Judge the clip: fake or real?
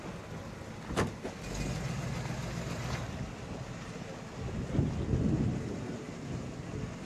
real